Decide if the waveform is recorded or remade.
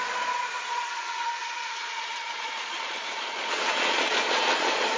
remade